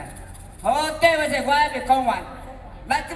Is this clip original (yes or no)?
yes